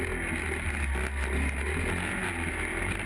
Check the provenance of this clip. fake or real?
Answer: real